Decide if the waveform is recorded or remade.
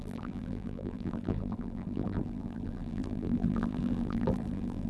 remade